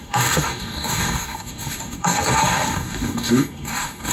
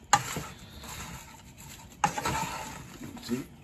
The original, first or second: second